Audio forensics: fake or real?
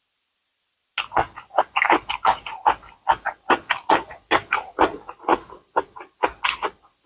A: real